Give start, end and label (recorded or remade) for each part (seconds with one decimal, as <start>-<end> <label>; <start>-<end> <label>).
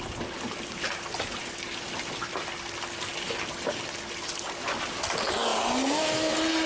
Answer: 0.0-6.7 recorded